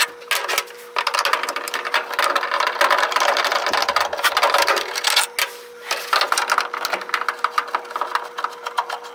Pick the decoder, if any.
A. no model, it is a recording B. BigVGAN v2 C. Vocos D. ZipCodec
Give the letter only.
A